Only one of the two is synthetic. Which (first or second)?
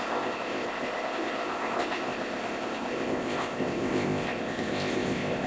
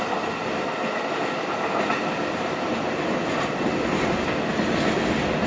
first